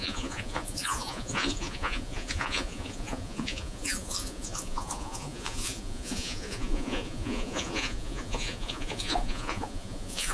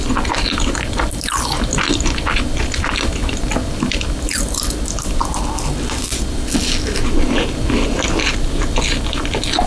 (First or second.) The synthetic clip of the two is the first